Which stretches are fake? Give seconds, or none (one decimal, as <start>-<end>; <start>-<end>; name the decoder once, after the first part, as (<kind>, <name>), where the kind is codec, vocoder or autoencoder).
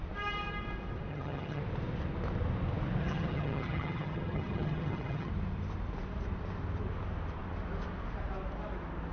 1.1-1.6 (vocoder, HiFi-GAN); 3.0-5.3